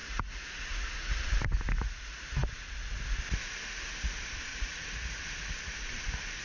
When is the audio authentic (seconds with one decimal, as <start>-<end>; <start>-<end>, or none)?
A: 1.1-4.5; 5.2-6.4